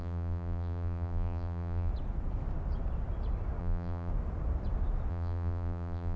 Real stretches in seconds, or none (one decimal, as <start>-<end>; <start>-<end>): 1.9-3.6; 4.1-5.1